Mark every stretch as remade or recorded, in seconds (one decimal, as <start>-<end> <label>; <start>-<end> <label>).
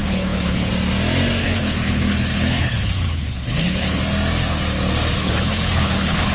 0.0-0.7 remade; 0.7-1.4 recorded; 1.4-4.0 remade; 4.0-5.2 recorded; 5.2-6.3 remade